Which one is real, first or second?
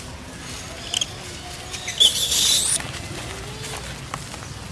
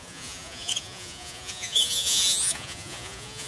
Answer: first